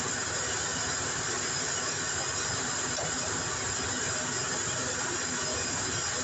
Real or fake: real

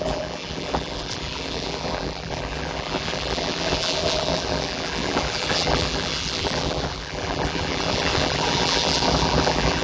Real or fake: fake